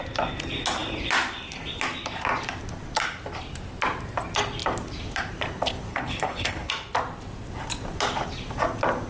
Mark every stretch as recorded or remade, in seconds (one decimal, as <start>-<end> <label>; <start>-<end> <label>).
0.0-5.9 recorded; 5.9-6.7 remade; 6.7-9.1 recorded